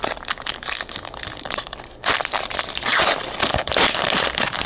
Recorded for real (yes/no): no